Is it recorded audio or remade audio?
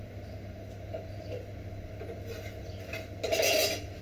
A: recorded